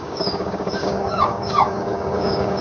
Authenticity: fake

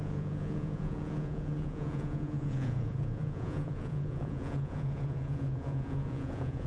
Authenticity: fake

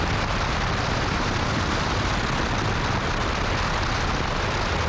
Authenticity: real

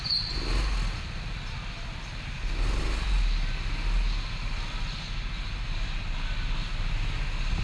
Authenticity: real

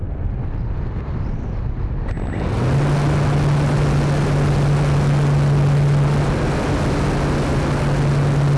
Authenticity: real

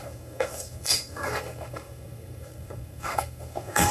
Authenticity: fake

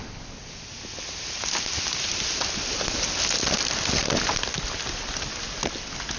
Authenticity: real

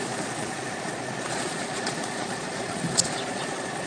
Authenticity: fake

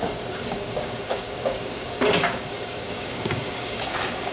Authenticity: fake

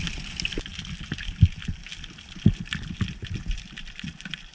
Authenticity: real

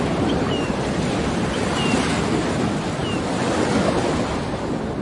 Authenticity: real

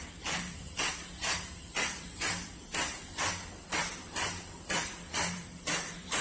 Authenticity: real